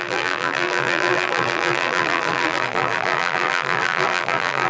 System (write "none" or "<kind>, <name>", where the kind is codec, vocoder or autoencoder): vocoder, BigVGAN v2